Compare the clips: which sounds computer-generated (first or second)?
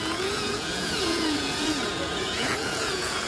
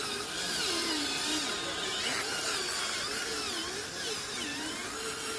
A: first